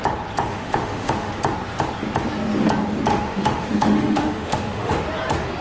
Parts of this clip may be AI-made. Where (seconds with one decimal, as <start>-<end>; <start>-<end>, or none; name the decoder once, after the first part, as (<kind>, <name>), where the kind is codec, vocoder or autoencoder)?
0.5-1.3 (autoencoder, DAC-VAE); 3.1-4.9